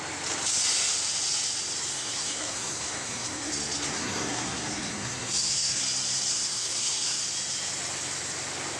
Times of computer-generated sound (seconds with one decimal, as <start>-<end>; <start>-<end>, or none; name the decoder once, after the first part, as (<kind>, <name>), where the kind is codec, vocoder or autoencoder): 1.9-3.5 (codec, SNAC); 3.9-5.8; 6.3-7.2